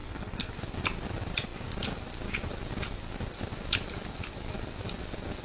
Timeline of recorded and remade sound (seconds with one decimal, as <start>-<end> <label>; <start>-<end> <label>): 0.0-0.5 remade; 0.5-5.4 recorded